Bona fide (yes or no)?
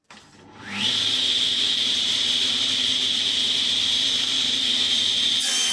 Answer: no